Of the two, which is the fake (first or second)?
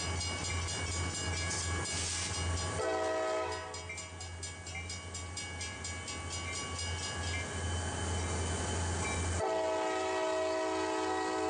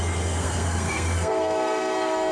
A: second